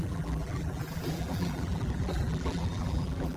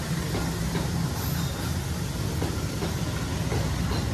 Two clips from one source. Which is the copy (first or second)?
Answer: first